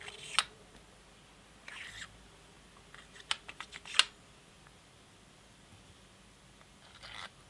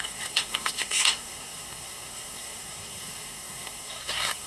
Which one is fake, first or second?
second